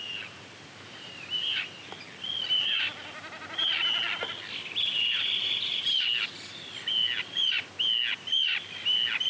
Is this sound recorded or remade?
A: recorded